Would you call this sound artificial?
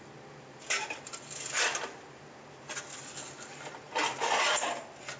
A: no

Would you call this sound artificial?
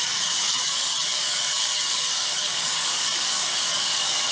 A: yes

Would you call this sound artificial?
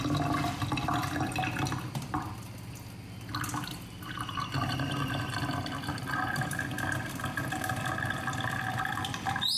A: no